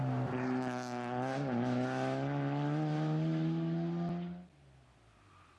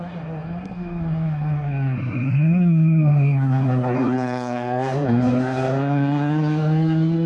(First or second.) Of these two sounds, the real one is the first